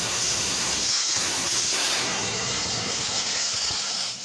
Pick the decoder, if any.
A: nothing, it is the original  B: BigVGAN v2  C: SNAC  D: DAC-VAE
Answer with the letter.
C